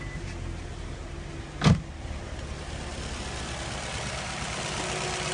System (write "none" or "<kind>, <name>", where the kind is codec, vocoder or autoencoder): none